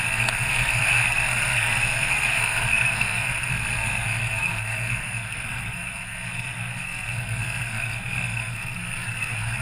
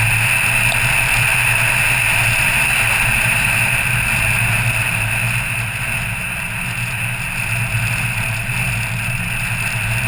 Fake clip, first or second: first